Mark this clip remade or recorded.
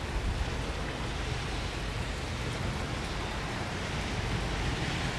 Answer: recorded